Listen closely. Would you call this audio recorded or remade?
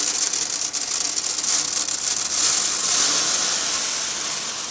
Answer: recorded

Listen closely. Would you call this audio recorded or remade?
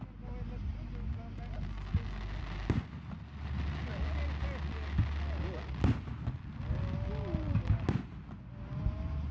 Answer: recorded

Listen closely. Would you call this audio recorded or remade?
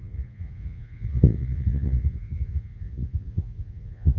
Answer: remade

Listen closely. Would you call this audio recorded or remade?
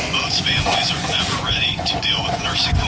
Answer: remade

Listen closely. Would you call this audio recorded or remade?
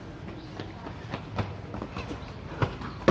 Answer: recorded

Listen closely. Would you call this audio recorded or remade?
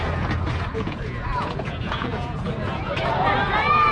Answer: remade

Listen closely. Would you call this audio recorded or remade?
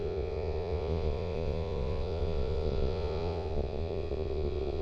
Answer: remade